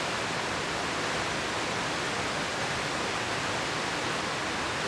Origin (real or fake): real